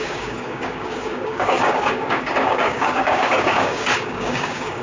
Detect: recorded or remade remade